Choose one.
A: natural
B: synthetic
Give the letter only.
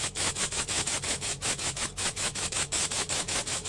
B